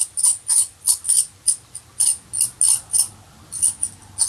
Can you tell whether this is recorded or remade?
recorded